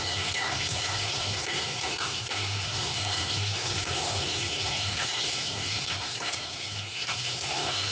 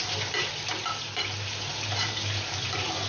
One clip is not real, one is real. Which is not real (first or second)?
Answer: first